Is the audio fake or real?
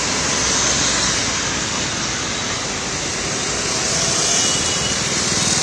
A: real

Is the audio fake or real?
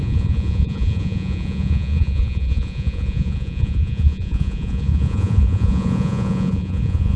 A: fake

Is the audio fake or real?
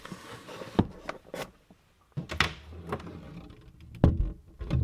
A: real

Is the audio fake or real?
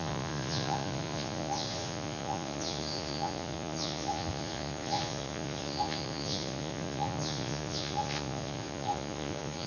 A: fake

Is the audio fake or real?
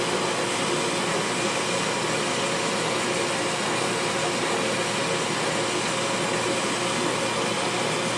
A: real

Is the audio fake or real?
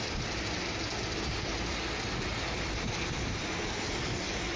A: real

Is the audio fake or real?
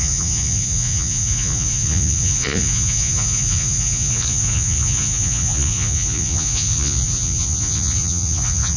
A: fake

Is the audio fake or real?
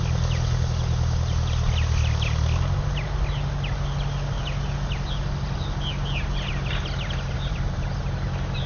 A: real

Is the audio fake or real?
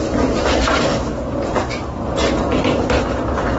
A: real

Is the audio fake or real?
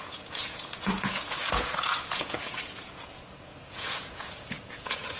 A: fake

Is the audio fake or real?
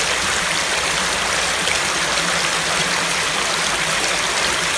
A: real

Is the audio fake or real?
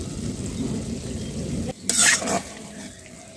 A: real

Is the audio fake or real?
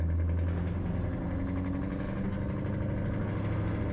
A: real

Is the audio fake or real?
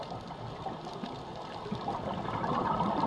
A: real